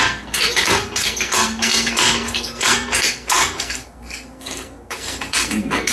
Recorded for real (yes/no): no